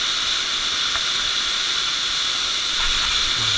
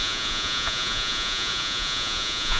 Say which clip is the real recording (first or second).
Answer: first